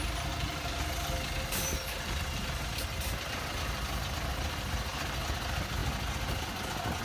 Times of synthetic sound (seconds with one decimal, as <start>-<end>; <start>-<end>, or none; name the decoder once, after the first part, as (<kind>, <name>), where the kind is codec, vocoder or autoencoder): none